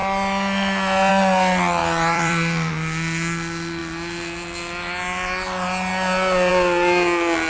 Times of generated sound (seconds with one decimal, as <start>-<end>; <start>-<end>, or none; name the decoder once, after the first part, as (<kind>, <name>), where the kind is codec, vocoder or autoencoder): 1.8-2.7 (vocoder, BigVGAN v2)